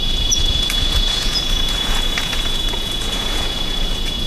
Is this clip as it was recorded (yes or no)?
no